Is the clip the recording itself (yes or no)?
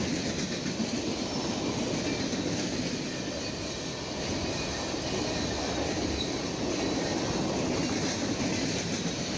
yes